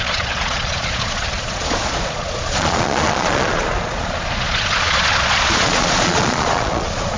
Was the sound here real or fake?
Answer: fake